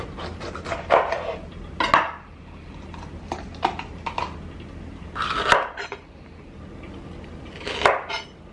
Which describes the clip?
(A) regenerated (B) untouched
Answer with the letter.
B